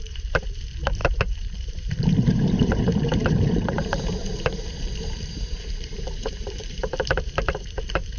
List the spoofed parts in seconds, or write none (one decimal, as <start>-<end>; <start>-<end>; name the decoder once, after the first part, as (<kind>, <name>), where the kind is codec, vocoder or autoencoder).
0.0-8.2 (vocoder, BigVGAN v2)